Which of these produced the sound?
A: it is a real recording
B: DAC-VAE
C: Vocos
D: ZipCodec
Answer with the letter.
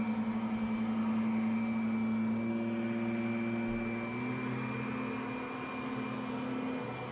A